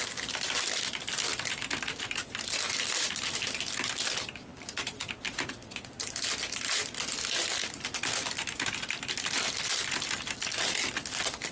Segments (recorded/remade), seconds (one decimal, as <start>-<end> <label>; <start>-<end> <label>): 0.0-11.5 recorded